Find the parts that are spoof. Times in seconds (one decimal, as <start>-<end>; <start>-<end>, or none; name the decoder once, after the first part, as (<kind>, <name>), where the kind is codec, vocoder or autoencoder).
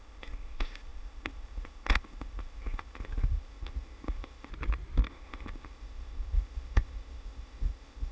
0.0-4.5 (codec, ZipCodec); 5.1-8.1